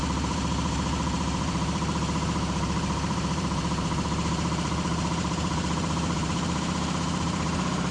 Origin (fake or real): fake